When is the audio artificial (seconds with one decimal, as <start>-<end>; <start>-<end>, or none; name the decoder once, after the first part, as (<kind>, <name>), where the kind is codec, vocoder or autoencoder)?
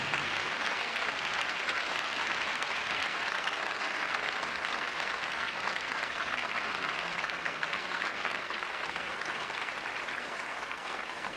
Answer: 0.0-9.7 (codec, SNAC); 10.2-11.4